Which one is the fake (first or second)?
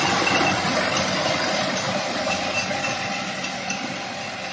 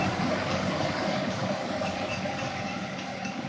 second